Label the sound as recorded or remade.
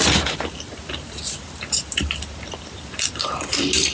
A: recorded